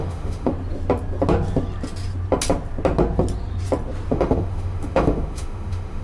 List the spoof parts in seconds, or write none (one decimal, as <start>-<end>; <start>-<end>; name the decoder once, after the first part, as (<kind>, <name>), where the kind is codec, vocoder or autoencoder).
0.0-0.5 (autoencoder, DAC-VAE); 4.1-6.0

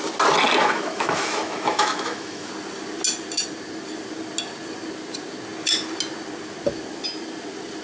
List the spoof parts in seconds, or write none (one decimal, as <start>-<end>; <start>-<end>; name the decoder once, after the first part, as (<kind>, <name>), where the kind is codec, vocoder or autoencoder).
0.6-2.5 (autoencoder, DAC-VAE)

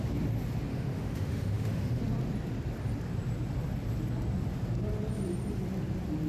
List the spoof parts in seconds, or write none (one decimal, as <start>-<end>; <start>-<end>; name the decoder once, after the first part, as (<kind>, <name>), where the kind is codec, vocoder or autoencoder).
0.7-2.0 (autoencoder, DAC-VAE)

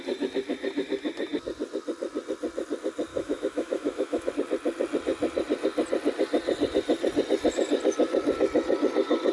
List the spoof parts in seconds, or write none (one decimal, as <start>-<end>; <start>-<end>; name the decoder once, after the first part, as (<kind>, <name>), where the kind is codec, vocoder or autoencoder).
3.1-4.3 (autoencoder, DAC-VAE)

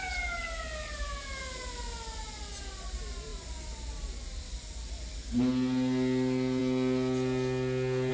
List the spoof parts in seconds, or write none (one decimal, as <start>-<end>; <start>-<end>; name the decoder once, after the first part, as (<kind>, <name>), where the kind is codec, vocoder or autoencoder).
none

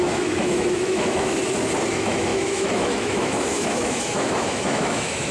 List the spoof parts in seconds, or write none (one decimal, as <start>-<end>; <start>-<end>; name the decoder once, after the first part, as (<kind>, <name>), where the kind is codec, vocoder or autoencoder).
0.0-1.4 (autoencoder, DAC-VAE); 1.9-5.3

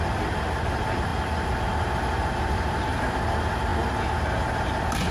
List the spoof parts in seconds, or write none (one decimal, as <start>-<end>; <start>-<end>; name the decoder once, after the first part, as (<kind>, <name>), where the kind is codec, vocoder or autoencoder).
none